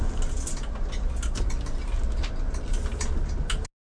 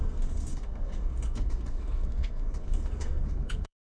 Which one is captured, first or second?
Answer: first